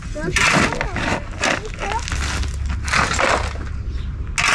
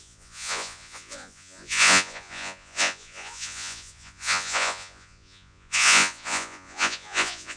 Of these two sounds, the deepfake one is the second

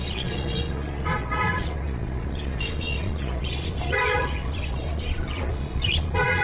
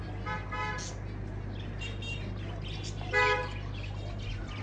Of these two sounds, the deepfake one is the first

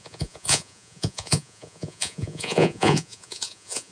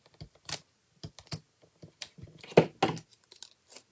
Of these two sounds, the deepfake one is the first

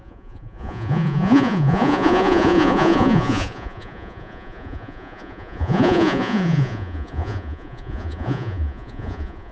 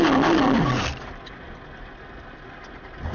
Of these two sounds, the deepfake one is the first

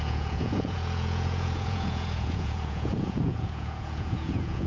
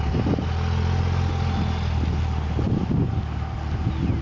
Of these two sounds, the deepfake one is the first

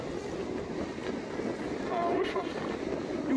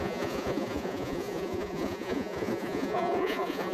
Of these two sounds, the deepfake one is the second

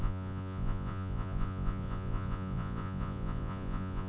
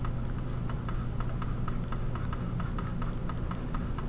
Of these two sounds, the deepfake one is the first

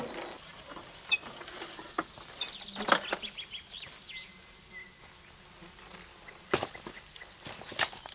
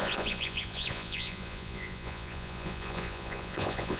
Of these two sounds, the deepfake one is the second